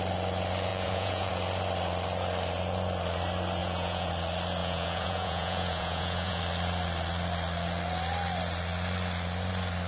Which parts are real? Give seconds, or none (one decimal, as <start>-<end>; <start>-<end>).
0.0-0.7; 1.3-3.6; 4.1-4.6; 6.4-9.9